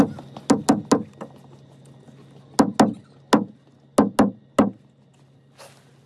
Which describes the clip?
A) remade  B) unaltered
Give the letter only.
B